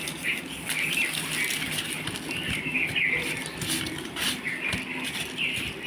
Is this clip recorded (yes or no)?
yes